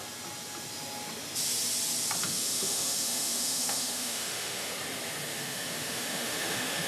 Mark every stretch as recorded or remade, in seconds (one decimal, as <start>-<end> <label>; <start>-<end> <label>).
0.0-2.2 recorded; 2.2-4.7 remade; 4.7-5.3 recorded; 5.3-6.9 remade